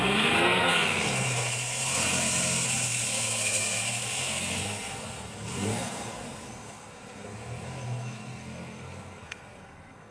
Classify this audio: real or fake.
fake